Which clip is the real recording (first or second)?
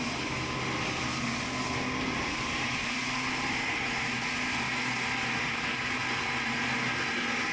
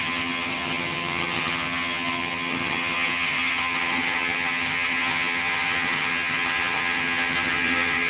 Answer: first